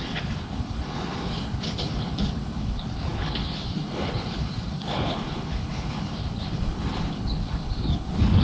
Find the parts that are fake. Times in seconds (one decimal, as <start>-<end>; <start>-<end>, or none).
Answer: 0.0-8.4